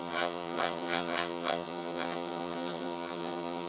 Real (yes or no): no